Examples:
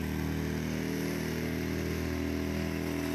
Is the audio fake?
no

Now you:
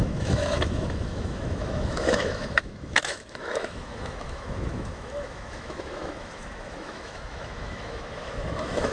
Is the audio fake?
yes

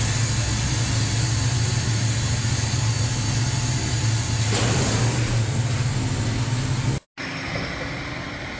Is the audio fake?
no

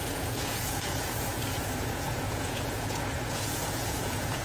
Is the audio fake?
yes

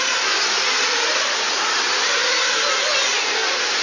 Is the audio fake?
no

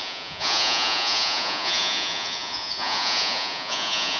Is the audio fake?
yes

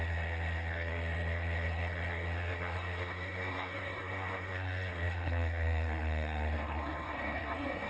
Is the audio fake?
yes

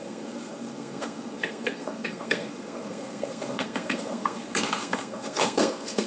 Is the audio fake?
yes